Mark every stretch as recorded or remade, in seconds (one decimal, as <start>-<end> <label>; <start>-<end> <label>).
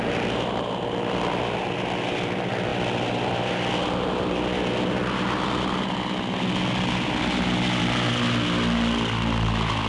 0.0-9.9 recorded